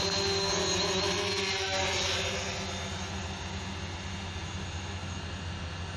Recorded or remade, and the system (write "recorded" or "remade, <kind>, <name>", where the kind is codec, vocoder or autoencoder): recorded